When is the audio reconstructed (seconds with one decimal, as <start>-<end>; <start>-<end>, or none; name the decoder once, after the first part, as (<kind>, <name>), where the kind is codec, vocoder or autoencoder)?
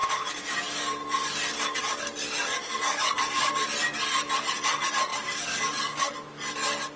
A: 2.5-3.5 (codec, DAC); 5.1-6.1